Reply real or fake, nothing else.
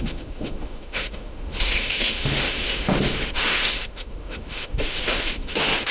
fake